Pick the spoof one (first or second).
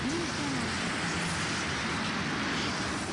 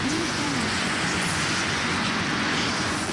second